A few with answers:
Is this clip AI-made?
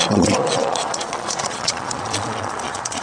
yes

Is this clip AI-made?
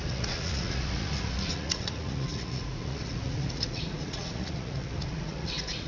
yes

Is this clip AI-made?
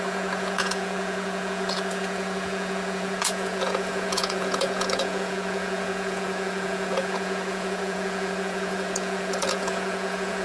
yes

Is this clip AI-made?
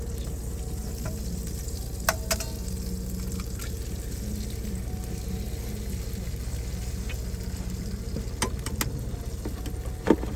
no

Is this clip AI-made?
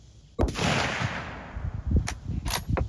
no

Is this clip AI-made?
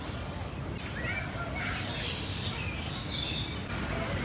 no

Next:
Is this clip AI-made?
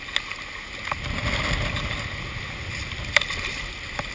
no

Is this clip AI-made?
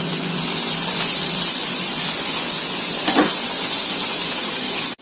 yes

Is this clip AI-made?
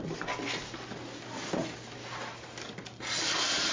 no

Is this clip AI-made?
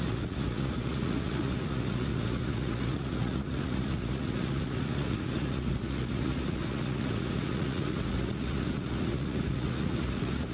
yes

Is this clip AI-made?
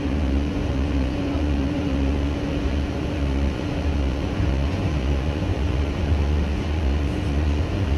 yes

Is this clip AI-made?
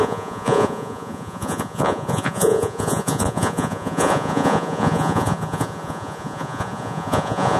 yes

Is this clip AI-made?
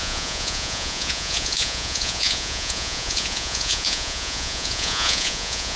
yes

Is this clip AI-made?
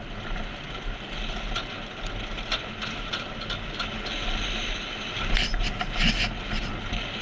no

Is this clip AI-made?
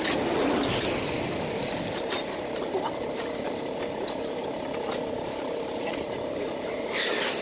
no